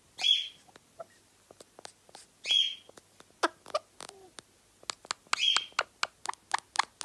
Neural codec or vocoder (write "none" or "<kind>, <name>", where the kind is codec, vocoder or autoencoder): none